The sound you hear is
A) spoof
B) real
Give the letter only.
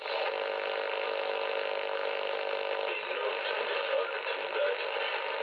B